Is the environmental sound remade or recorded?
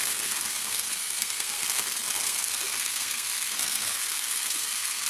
remade